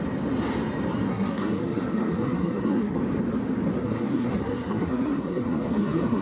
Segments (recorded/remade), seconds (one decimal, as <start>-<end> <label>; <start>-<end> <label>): 0.0-1.1 recorded; 1.1-3.0 remade; 3.0-3.8 recorded; 3.8-6.2 remade